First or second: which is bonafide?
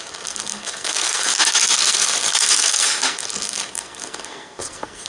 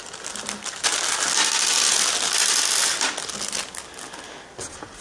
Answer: second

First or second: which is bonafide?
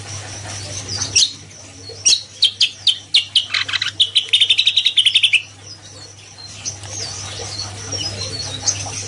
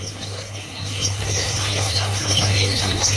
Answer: first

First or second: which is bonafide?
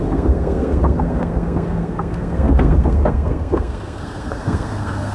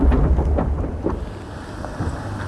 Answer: second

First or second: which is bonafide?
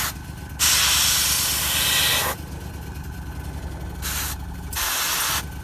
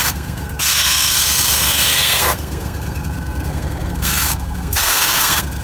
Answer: first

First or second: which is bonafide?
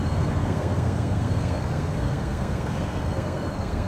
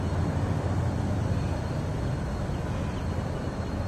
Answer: second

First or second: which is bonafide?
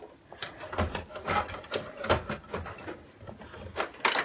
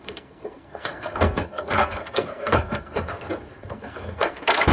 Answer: first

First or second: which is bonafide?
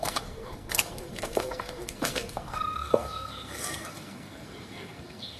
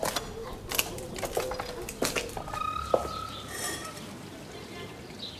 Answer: second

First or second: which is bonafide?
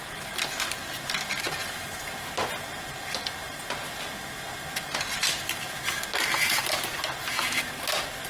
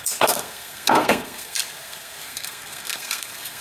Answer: first